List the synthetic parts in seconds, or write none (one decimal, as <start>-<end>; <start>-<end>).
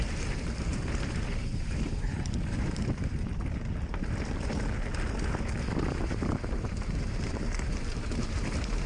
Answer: 0.0-3.3; 5.9-8.9